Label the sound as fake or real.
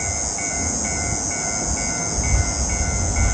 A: real